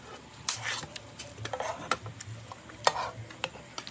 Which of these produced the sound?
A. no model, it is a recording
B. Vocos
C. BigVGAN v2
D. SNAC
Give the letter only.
A